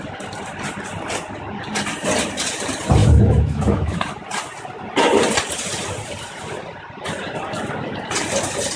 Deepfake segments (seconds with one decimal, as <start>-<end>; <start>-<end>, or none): 3.0-4.0